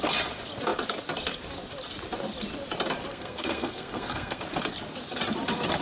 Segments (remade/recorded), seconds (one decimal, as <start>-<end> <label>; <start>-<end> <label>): 0.0-3.1 recorded; 3.1-4.4 remade; 4.4-5.8 recorded